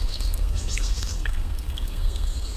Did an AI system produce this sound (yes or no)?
yes